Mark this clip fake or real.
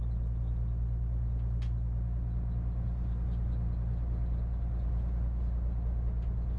real